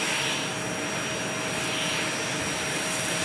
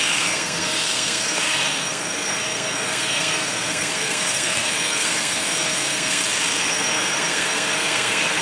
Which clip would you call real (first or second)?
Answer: first